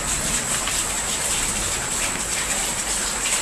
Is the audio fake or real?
real